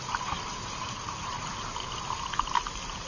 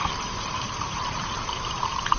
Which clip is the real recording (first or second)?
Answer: first